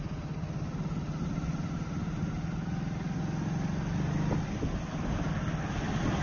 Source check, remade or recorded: recorded